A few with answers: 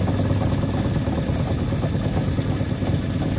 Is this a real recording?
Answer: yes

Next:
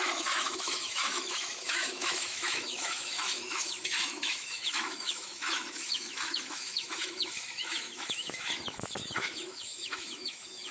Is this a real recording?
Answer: no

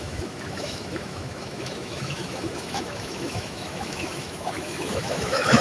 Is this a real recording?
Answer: no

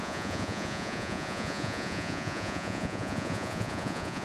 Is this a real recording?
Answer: no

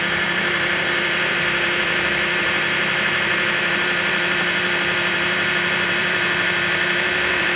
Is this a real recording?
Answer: no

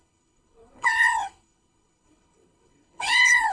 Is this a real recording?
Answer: no